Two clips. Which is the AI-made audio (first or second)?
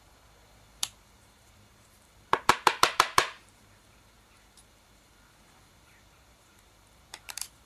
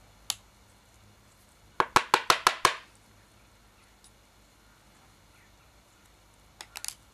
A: first